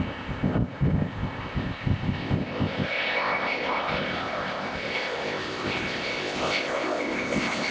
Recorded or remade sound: remade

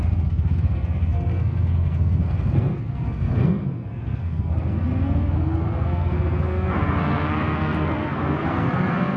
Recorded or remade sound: remade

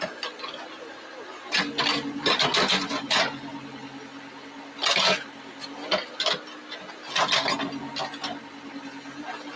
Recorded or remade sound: recorded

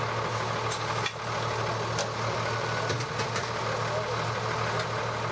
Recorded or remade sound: recorded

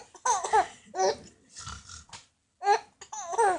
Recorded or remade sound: recorded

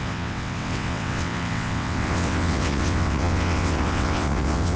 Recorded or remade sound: remade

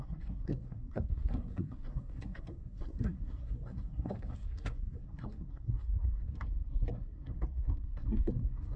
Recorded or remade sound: remade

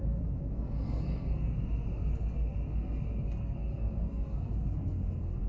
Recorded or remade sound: remade